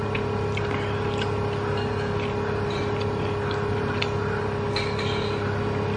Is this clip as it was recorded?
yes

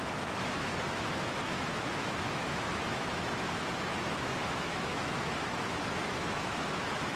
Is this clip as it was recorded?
no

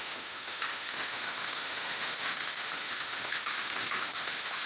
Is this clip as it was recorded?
no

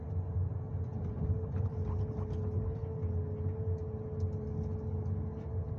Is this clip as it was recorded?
yes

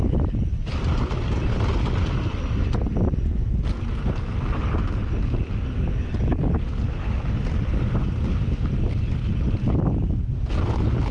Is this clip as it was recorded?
yes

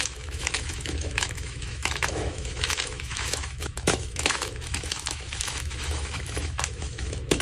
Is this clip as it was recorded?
no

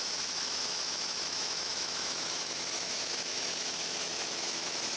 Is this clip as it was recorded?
no